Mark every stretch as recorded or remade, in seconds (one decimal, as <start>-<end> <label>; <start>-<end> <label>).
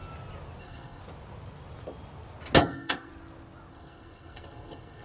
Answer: 0.0-0.6 recorded; 0.6-1.0 remade; 1.0-2.6 recorded; 2.6-3.1 remade; 3.1-3.7 recorded; 3.7-5.0 remade